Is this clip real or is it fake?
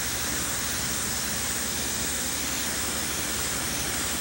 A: real